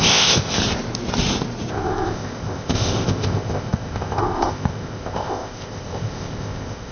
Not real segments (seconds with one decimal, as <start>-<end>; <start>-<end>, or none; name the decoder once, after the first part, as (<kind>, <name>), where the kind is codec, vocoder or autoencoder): 0.0-0.6 (codec, ZipCodec); 1.7-6.9